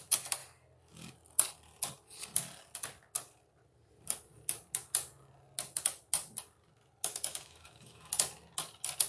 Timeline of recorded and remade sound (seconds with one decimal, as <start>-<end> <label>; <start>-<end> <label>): 0.0-7.3 recorded; 7.3-8.1 remade; 8.1-9.1 recorded